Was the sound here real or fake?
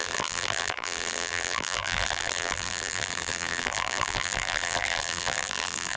fake